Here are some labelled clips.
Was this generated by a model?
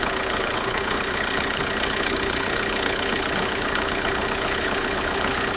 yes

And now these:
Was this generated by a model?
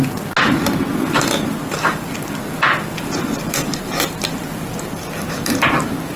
no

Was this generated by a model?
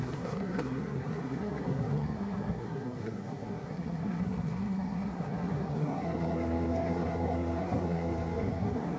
yes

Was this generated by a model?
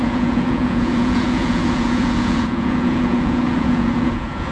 yes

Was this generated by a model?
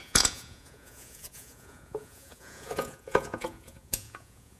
yes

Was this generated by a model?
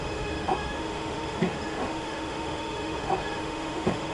yes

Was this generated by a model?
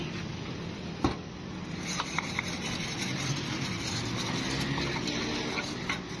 no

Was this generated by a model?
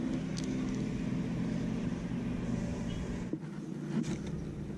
no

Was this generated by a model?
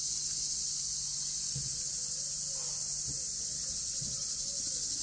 no